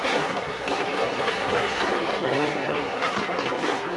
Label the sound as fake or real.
fake